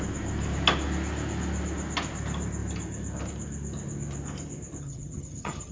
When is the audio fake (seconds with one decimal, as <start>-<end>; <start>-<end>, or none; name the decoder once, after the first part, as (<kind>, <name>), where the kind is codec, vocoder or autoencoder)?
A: 4.8-5.7 (vocoder, HiFi-GAN)